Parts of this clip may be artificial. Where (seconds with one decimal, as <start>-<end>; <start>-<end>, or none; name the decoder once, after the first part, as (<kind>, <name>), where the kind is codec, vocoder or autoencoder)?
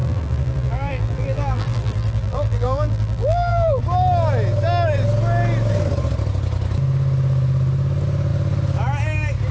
0.0-3.8 (vocoder, BigVGAN v2)